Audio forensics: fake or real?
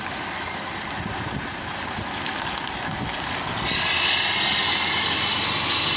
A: real